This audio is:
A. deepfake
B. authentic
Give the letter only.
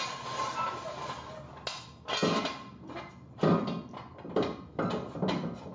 B